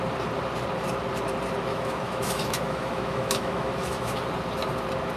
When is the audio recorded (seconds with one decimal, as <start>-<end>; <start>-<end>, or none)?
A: 0.0-1.7; 4.2-5.2